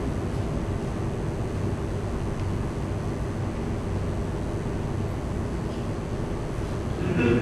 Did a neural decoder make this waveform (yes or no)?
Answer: no